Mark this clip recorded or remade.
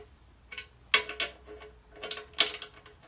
recorded